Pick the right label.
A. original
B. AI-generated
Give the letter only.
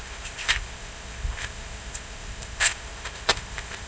B